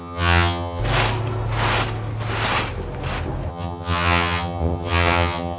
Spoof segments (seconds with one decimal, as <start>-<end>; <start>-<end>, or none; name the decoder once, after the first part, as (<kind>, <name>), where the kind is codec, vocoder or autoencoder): 0.0-0.8 (vocoder, HiFi-GAN); 3.5-5.6